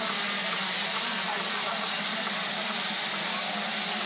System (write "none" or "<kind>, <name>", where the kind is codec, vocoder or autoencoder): none